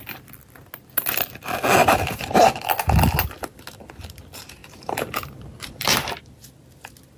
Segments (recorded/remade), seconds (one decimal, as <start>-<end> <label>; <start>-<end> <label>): 0.0-1.8 recorded; 1.8-2.4 remade; 2.4-4.6 recorded; 4.6-6.2 remade; 6.2-7.2 recorded